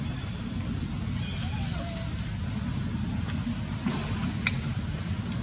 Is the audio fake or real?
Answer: real